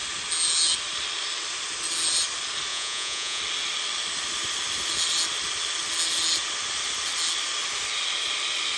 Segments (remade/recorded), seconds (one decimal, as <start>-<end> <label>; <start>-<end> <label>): 0.0-2.7 recorded; 2.7-3.4 remade; 3.4-8.8 recorded